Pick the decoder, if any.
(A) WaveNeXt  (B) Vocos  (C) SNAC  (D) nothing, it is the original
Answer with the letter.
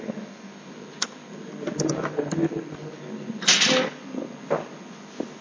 D